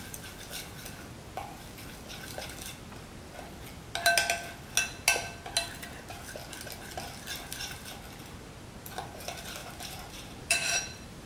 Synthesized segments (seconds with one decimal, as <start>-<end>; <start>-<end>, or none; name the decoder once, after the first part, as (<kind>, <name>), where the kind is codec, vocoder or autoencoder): 9.6-11.3 (vocoder, BigVGAN v2)